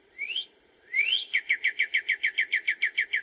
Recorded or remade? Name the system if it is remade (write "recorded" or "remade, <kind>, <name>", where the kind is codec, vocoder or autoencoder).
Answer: recorded